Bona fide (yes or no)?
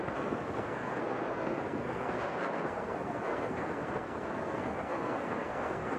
no